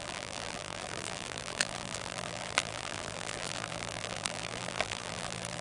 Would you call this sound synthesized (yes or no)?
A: yes